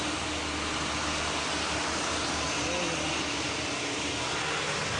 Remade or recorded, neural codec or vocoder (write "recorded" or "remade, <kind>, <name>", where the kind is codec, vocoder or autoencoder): recorded